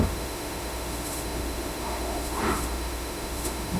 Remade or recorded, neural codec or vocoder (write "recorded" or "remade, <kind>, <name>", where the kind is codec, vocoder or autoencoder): remade, autoencoder, DAC-VAE